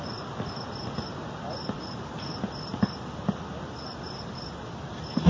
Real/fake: real